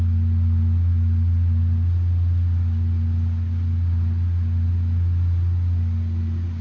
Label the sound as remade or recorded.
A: recorded